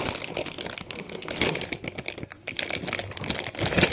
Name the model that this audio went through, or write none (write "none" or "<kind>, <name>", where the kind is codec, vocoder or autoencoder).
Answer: none